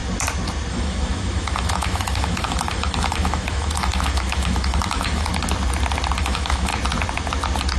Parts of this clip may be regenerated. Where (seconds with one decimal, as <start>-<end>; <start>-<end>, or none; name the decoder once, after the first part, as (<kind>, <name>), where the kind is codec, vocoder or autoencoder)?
0.7-5.3 (autoencoder, DAC-VAE); 6.2-6.7